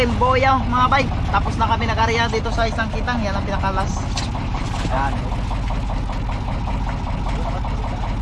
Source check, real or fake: real